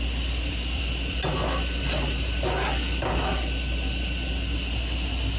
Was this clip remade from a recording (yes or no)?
no